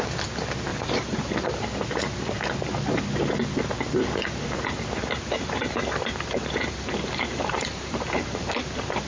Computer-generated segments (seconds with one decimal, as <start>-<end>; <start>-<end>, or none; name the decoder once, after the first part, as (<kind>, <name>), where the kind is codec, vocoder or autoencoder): 0.7-1.6 (vocoder, BigVGAN v2); 5.0-9.1